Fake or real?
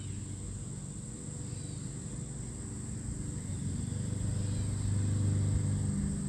real